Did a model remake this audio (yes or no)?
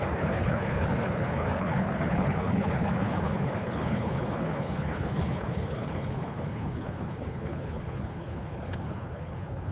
yes